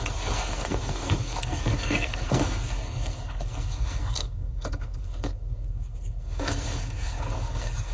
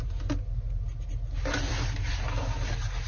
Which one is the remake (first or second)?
first